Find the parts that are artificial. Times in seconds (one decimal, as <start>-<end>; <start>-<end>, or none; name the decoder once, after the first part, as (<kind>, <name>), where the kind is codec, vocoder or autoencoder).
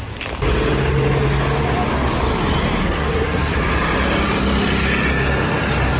2.8-3.6 (codec, SNAC)